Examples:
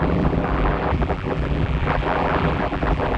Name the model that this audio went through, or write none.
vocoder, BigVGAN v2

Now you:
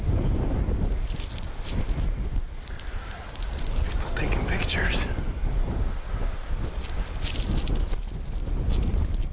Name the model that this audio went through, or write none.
vocoder, BigVGAN v2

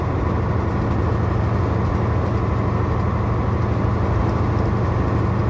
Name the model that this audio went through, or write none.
none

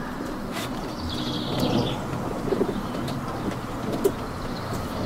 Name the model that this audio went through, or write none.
vocoder, BigVGAN v2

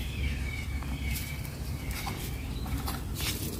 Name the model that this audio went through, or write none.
vocoder, BigVGAN v2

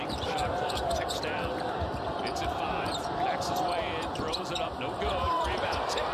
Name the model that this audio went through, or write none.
vocoder, BigVGAN v2